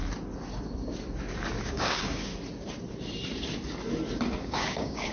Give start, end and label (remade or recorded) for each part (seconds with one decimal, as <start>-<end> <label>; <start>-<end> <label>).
0.0-1.6 recorded; 1.6-2.3 remade; 2.3-4.4 recorded; 4.4-5.1 remade